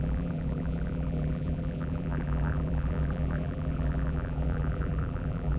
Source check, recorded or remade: remade